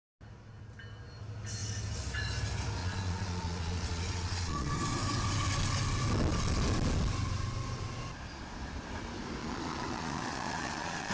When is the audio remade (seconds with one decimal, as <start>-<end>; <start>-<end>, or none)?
2.8-4.7; 9.4-11.1